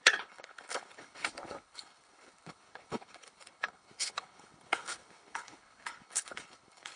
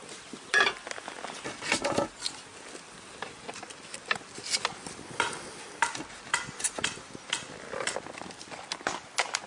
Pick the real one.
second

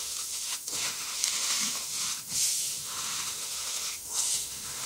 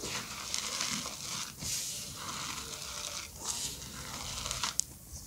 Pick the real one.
second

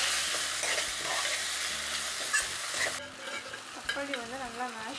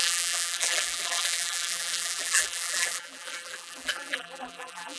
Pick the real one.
first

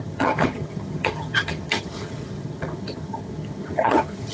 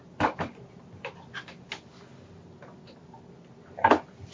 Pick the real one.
second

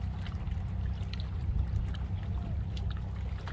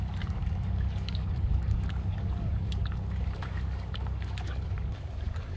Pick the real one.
first